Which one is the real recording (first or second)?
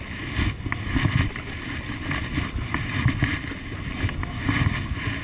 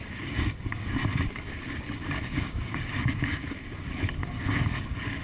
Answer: first